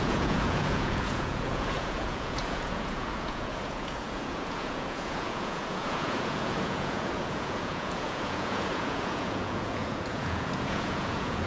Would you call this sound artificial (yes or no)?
yes